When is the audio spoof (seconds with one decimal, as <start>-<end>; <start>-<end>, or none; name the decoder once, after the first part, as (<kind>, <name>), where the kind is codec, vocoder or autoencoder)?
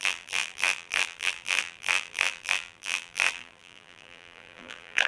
0.0-5.1 (vocoder, BigVGAN v2)